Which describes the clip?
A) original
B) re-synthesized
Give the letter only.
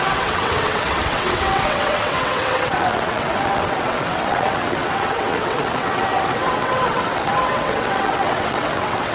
B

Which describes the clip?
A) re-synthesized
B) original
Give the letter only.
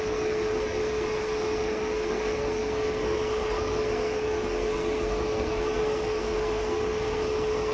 A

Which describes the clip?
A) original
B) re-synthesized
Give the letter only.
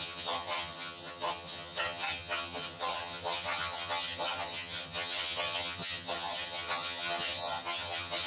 B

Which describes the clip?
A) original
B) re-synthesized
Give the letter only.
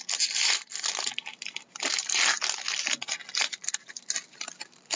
A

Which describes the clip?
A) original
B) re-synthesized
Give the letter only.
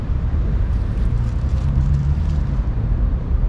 B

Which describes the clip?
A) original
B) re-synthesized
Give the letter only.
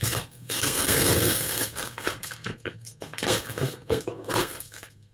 B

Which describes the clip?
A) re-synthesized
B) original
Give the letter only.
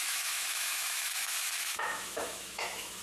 A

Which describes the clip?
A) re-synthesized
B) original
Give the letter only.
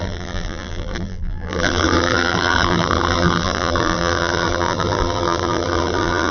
A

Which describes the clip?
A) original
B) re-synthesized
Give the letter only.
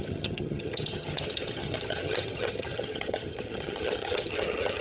B